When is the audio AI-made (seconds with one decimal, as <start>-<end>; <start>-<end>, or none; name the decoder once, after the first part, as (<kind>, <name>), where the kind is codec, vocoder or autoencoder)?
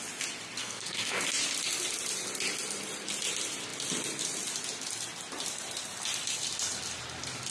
0.6-1.2 (codec, SNAC)